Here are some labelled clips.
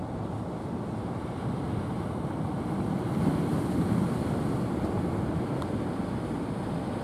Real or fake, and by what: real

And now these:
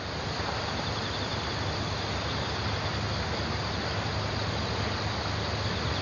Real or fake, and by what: real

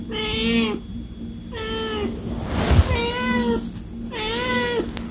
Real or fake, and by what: real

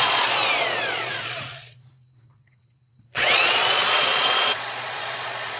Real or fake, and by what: fake, vocoder, Vocos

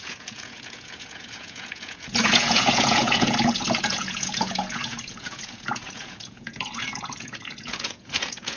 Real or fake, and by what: fake, vocoder, Vocos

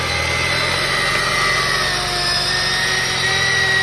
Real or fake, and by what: real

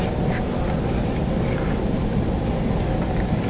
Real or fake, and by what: real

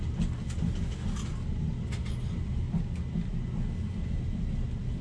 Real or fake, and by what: real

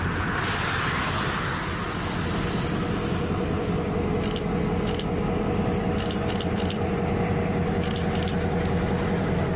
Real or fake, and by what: real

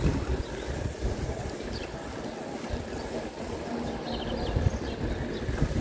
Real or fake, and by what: real